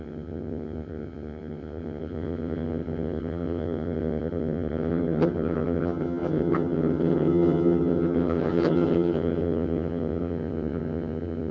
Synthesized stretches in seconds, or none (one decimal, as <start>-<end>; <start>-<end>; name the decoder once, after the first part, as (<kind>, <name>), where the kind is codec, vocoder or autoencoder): 0.0-11.5 (vocoder, HiFi-GAN)